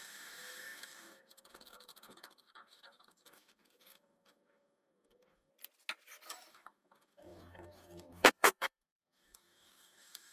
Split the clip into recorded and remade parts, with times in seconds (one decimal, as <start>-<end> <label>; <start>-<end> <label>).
0.0-5.5 remade; 5.5-6.5 recorded; 6.5-10.3 remade